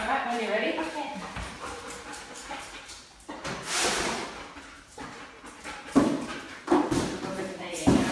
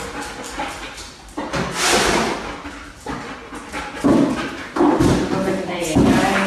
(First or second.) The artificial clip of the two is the first